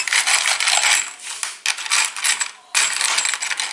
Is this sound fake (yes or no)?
no